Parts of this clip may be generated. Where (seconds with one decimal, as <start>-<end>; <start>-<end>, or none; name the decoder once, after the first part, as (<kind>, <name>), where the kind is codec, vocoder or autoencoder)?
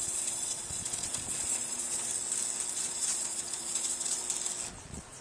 0.0-2.1 (vocoder, Vocos); 2.7-4.2; 4.8-5.2